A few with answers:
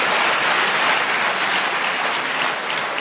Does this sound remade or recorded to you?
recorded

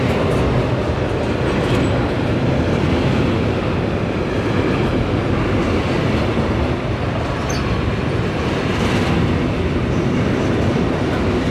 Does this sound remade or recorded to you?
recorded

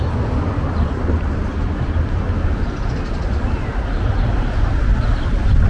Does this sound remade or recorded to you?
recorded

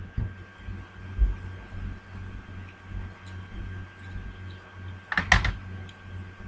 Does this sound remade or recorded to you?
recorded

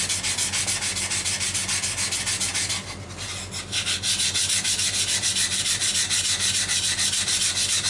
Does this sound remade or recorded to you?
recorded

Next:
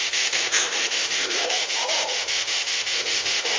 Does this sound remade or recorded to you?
remade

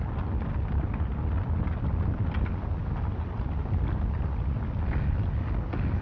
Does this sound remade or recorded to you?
recorded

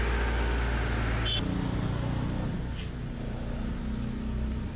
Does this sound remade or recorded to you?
recorded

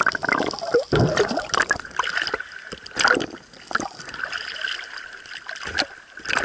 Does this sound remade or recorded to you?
recorded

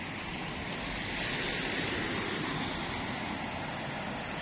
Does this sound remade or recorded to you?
recorded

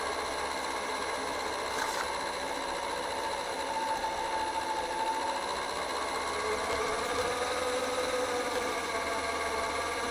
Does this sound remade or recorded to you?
recorded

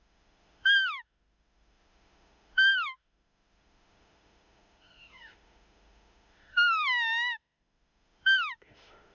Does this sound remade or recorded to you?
remade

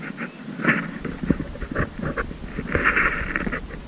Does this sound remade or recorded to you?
recorded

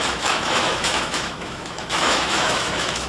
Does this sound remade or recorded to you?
remade